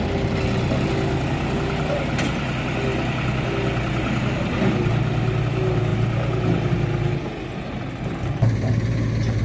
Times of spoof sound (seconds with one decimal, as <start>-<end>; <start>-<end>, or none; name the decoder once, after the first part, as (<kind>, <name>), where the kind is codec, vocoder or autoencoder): none

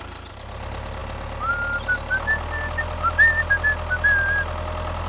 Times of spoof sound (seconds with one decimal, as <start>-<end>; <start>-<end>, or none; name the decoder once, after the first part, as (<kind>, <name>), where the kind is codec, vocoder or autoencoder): none

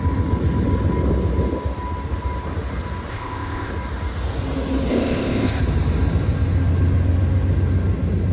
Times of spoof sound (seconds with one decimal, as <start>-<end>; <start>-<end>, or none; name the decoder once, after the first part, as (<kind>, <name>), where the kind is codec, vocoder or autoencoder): 3.1-3.7 (codec, ZipCodec); 4.9-5.6

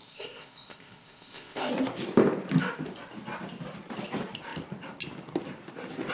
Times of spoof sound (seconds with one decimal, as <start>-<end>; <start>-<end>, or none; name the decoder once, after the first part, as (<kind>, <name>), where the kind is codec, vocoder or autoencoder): 0.0-1.7 (codec, ZipCodec)

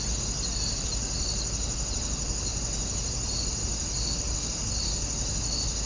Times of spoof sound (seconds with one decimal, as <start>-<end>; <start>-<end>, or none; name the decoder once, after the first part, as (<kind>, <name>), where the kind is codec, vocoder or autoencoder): none

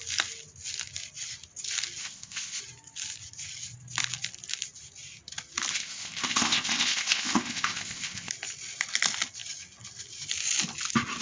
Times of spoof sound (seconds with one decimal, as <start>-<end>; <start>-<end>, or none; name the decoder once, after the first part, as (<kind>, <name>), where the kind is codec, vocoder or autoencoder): 2.0-2.6 (codec, ZipCodec); 5.7-8.3

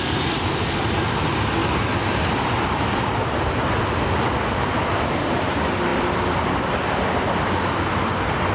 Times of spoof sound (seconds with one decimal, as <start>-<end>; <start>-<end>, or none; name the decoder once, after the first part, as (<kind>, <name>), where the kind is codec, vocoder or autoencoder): none